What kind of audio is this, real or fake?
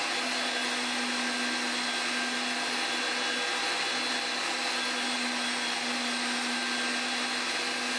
real